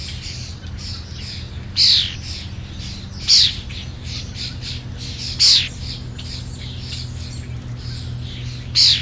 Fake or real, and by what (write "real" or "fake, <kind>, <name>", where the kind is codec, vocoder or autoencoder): real